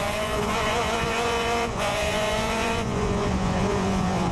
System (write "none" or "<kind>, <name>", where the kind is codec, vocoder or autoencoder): vocoder, Vocos